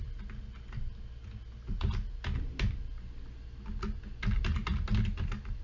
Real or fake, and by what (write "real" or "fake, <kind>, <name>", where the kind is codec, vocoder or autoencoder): real